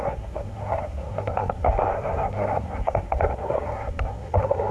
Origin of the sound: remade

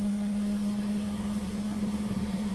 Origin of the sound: remade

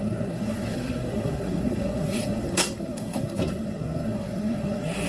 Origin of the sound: remade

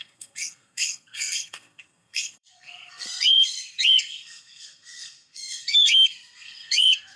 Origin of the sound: remade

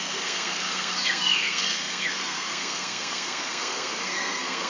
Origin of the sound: remade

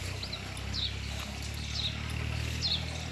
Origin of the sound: recorded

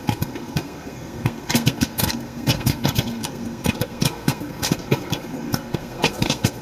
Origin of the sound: remade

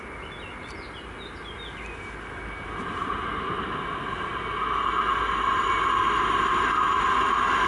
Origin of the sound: recorded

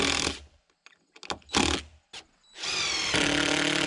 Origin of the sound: recorded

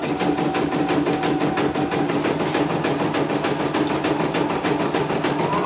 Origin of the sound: recorded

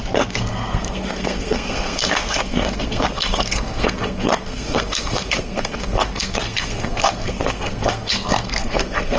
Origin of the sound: remade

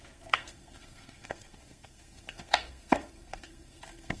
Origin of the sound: remade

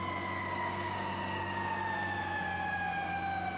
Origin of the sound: recorded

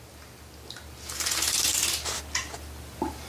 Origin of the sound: recorded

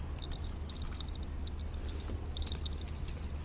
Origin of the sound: recorded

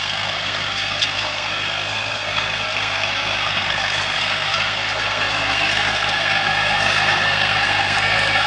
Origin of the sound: remade